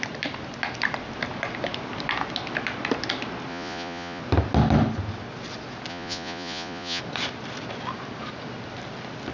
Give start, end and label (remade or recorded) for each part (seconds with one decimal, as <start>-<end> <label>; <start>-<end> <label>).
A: 0.0-3.5 recorded; 3.5-4.2 remade; 4.2-5.9 recorded; 5.9-7.0 remade; 7.0-9.3 recorded